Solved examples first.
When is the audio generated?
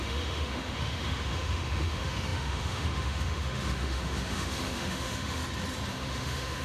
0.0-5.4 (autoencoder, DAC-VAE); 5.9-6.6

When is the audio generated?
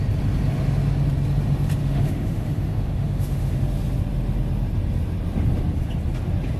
1.8-3.6 (autoencoder, DAC-VAE)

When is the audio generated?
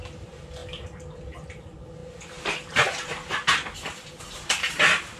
none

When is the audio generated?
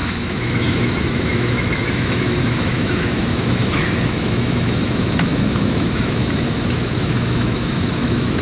0.0-8.4 (autoencoder, DAC-VAE)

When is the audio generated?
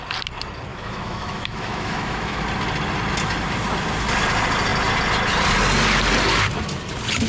0.7-2.4 (autoencoder, DAC-VAE)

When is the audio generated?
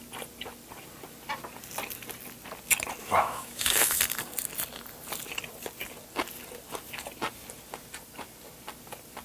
3.0-4.0 (autoencoder, DAC-VAE)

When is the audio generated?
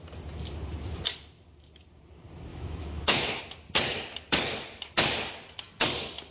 2.5-3.4 (autoencoder, DAC-VAE)